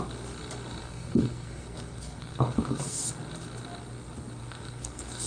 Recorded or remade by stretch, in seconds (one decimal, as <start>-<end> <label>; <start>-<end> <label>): 0.0-0.8 recorded; 0.8-3.1 remade; 3.1-4.4 recorded; 4.4-5.3 remade